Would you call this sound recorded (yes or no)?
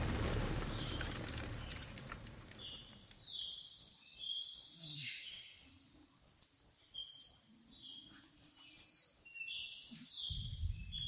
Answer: no